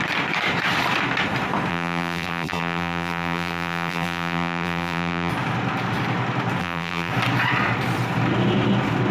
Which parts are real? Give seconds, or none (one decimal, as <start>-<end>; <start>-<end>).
0.0-1.7; 5.3-6.6; 7.1-9.1